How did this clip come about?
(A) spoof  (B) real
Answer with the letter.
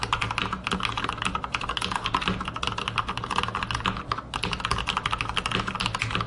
B